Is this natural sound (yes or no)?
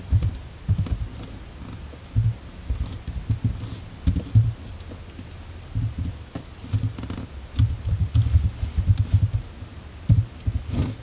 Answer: yes